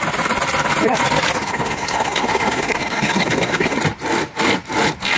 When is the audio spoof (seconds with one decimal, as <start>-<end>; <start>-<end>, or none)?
1.4-3.8

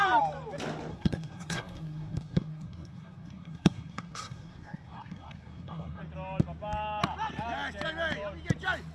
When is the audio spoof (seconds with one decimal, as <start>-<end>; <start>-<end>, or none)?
0.9-6.0

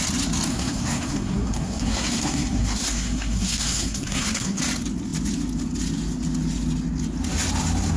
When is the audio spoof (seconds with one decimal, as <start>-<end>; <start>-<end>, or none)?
0.5-4.6

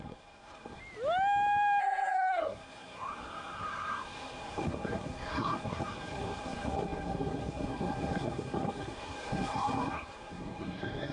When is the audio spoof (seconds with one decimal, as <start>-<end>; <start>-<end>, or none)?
0.0-0.8; 1.8-11.1

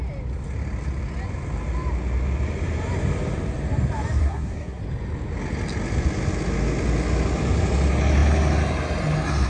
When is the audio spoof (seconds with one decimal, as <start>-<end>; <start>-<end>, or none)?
4.2-4.8

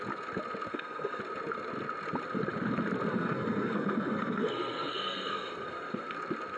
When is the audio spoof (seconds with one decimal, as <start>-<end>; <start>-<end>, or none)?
0.7-1.2; 3.1-6.1